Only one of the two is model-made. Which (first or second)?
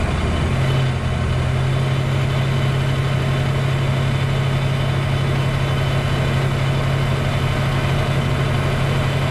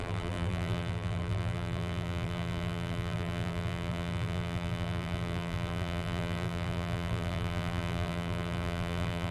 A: second